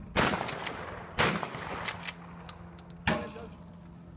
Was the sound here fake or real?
real